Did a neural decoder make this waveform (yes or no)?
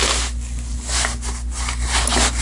no